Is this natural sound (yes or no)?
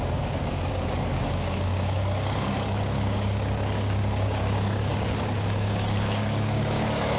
no